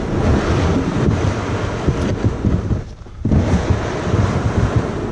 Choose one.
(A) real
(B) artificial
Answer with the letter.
A